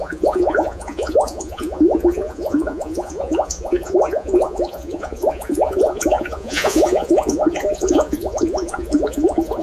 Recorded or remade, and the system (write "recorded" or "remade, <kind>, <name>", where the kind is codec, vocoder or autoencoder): remade, vocoder, Vocos